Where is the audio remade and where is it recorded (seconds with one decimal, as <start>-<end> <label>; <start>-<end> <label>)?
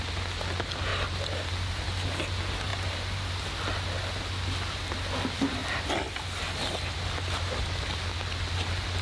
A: 0.0-9.0 recorded